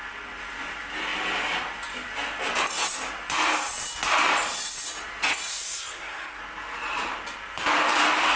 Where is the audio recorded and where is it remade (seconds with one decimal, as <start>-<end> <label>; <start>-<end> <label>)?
0.0-5.5 recorded; 5.5-6.4 remade; 6.4-8.4 recorded